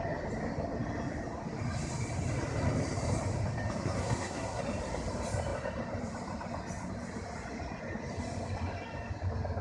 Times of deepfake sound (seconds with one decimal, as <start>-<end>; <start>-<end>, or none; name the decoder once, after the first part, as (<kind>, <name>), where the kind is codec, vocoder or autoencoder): 3.8-4.6 (codec, SNAC)